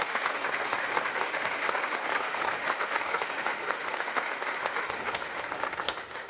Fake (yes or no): yes